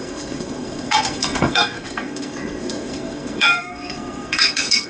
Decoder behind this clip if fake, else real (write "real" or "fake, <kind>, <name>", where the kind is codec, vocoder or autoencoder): fake, codec, SNAC